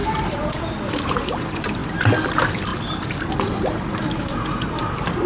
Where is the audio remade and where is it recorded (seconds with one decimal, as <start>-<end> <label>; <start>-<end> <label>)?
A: 0.0-1.8 remade; 1.8-2.3 recorded; 2.3-2.7 remade; 2.7-3.3 recorded; 3.3-5.3 remade